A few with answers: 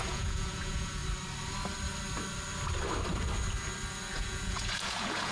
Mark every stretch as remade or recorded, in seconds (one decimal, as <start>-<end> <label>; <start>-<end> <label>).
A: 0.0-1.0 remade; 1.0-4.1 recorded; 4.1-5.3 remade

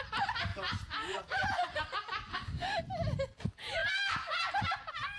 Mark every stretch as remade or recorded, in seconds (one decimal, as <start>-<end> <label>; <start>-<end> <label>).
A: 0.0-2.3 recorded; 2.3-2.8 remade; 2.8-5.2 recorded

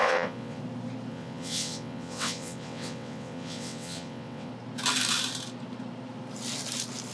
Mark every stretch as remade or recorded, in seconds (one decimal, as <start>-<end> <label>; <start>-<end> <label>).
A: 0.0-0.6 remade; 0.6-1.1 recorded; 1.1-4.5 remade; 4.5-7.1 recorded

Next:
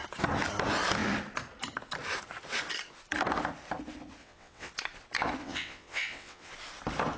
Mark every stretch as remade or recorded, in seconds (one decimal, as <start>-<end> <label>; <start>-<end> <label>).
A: 0.0-4.2 recorded; 4.2-4.7 remade; 4.7-5.4 recorded; 5.4-6.5 remade; 6.5-7.2 recorded

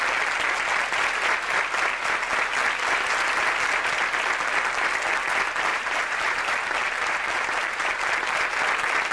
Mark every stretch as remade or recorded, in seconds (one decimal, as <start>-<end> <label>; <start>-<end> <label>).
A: 0.0-5.7 recorded; 5.7-7.9 remade; 7.9-9.1 recorded

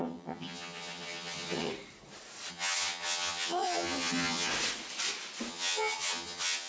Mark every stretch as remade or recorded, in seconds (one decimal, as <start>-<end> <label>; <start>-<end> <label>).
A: 0.0-1.7 remade; 1.7-2.5 recorded; 2.5-4.5 remade; 4.5-5.5 recorded; 5.5-6.7 remade

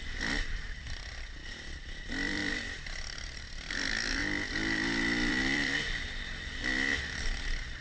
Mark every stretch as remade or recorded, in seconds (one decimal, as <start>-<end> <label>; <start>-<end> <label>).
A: 0.0-4.2 remade; 4.2-5.3 recorded; 5.3-7.8 remade

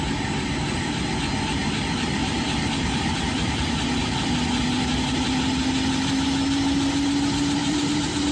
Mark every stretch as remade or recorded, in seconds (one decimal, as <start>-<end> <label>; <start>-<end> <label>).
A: 0.0-2.2 recorded; 2.2-4.3 remade; 4.3-7.6 recorded; 7.6-8.3 remade